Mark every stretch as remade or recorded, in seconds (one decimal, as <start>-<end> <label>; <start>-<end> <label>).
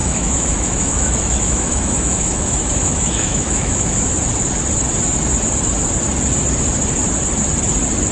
0.0-4.1 remade; 4.1-8.1 recorded